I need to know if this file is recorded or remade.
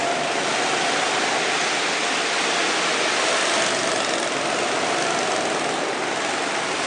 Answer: recorded